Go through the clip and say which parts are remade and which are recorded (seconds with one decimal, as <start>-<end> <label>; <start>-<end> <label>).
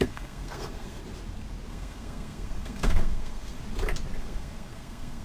0.0-1.0 remade; 1.0-1.7 recorded; 1.7-3.6 remade; 3.6-4.2 recorded; 4.2-5.2 remade